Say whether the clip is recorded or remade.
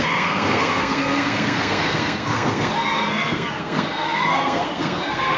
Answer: remade